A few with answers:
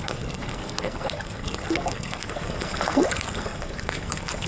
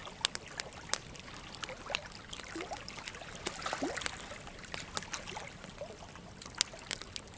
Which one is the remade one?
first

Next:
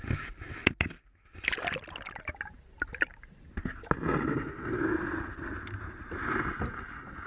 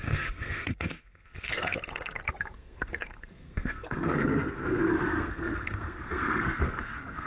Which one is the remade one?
second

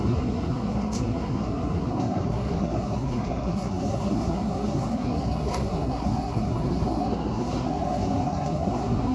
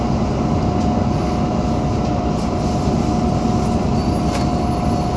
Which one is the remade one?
first